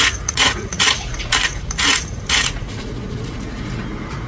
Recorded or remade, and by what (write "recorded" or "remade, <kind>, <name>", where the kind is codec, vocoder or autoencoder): remade, vocoder, Vocos